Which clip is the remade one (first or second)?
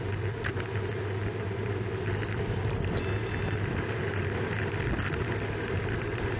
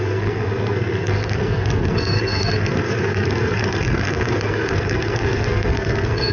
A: second